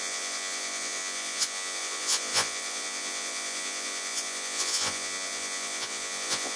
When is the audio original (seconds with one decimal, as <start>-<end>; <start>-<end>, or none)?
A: none